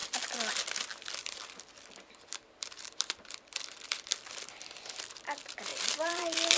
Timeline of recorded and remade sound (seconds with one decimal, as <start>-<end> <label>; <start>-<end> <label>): 0.0-1.2 recorded; 1.2-4.3 remade; 4.3-5.7 recorded; 5.7-6.6 remade